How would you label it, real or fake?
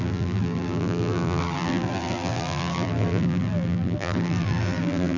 fake